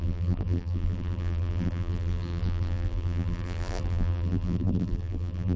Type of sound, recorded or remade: remade